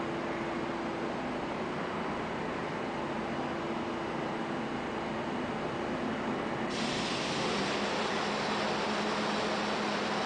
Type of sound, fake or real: real